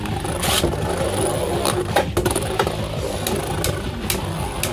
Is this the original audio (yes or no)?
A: yes